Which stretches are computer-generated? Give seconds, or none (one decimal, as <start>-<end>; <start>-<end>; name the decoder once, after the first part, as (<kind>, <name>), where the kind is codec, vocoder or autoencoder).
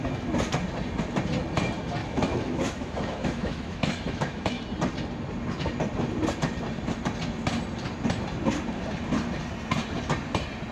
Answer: 2.0-4.6 (autoencoder, DAC-VAE)